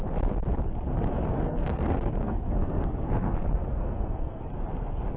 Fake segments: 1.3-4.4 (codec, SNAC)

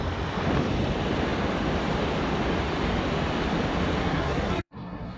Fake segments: 4.0-5.2 (codec, SNAC)

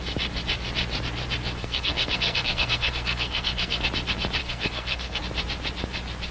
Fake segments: 1.6-3.8 (codec, SNAC); 4.4-5.2

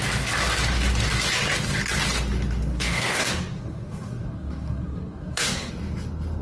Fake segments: 2.7-5.7 (codec, SNAC)

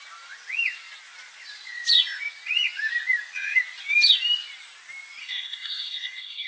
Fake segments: 5.2-6.5 (codec, SNAC)

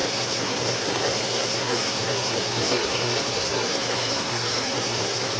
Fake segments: 0.0-5.4 (codec, SNAC)